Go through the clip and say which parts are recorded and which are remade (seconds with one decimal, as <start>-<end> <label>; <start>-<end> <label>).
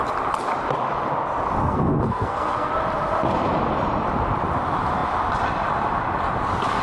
0.0-1.6 recorded; 1.6-2.7 remade; 2.7-6.8 recorded